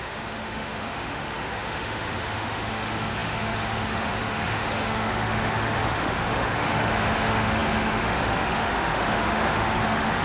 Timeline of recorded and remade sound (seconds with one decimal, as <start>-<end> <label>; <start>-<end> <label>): 0.0-10.2 remade